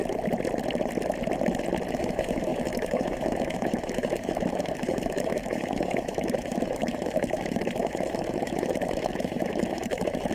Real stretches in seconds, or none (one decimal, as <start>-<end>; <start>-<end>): 0.0-1.9

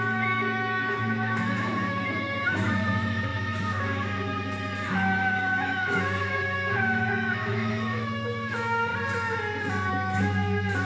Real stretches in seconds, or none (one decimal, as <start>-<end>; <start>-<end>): 8.9-9.9

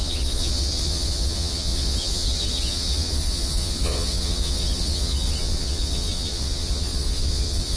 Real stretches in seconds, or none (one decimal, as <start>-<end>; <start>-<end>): none

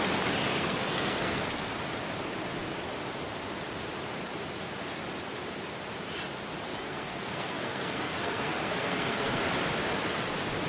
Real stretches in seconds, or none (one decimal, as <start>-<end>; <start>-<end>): 0.0-0.5; 1.7-6.7; 9.4-10.7